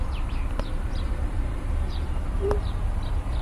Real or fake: fake